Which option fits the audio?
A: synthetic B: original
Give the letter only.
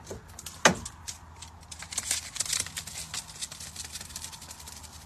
B